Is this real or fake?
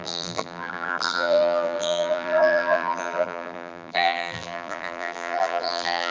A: fake